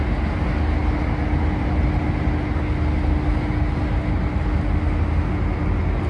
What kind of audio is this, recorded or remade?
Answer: recorded